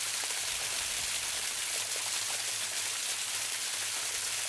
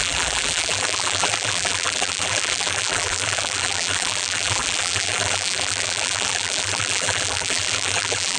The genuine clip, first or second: first